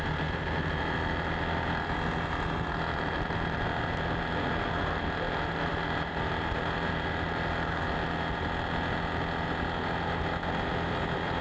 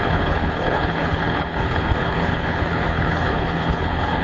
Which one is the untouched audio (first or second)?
first